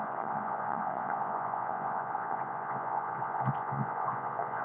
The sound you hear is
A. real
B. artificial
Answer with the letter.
B